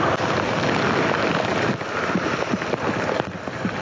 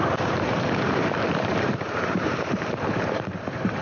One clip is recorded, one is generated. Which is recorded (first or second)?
first